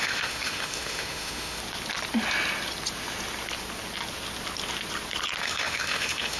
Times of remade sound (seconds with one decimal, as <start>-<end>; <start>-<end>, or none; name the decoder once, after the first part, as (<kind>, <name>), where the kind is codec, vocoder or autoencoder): 0.0-1.6 (autoencoder, DAC-VAE); 5.4-6.4

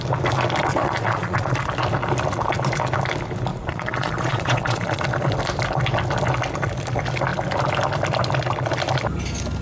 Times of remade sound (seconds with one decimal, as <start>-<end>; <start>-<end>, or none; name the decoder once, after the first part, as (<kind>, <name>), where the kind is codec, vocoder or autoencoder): 0.8-1.5 (vocoder, Vocos); 3.5-5.0

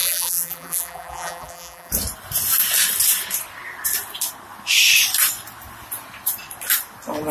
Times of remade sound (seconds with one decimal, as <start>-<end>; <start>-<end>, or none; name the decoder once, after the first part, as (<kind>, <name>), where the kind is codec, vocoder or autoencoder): 0.0-1.9 (vocoder, BigVGAN v2)

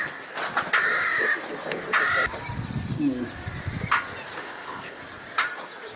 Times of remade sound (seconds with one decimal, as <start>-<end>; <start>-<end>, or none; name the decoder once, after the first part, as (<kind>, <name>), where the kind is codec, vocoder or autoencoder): 4.4-5.0 (codec, ZipCodec)

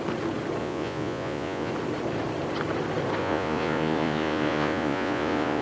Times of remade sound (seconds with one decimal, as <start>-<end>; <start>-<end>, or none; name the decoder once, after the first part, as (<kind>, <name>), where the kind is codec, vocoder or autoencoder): 0.6-1.7 (vocoder, Vocos); 3.2-5.6